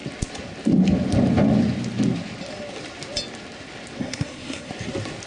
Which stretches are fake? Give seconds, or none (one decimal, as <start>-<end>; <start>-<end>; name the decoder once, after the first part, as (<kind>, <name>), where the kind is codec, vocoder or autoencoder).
4.0-4.7 (codec, SNAC)